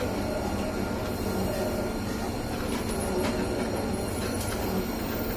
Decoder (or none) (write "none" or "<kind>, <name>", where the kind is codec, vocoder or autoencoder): none